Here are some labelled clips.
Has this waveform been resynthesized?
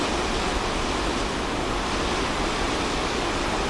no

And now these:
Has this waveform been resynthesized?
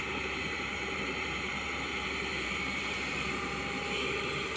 yes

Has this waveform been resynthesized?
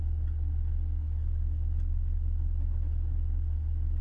no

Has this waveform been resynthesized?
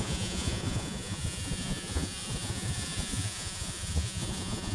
yes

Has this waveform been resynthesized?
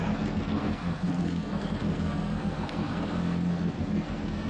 yes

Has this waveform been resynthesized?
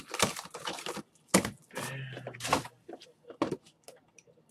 no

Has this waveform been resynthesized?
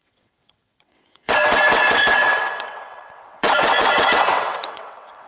yes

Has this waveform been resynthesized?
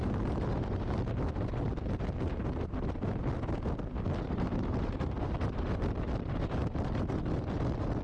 no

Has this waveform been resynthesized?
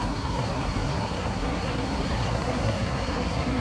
yes